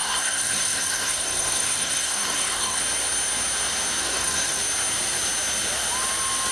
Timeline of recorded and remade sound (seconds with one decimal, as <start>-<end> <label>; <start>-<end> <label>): 0.0-2.8 remade; 2.8-4.0 recorded; 4.0-4.6 remade; 4.6-6.5 recorded